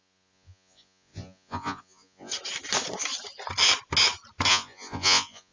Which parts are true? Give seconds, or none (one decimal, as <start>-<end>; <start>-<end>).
2.3-4.5